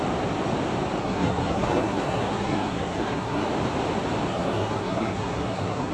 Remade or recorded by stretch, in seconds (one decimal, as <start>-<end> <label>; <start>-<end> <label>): 0.0-1.0 recorded; 1.0-3.5 remade; 3.5-4.3 recorded; 4.3-5.9 remade